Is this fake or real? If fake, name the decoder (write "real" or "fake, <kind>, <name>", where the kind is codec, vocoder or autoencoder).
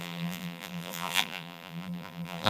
fake, vocoder, BigVGAN v2